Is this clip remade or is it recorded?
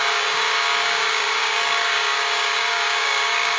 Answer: remade